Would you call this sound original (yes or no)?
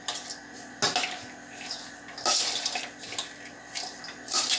yes